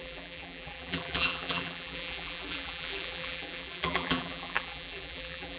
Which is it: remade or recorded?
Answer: remade